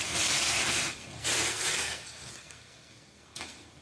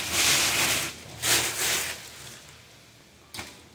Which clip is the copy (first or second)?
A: first